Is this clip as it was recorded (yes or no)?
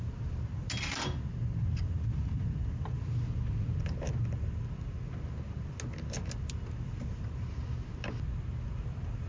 yes